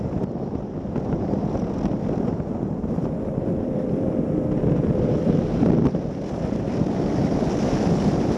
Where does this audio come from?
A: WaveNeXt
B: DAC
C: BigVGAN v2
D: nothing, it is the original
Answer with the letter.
C